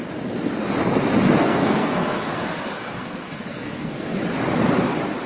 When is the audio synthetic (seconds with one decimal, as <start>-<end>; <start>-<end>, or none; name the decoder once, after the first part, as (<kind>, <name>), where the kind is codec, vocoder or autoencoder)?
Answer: 1.4-4.2 (codec, SNAC)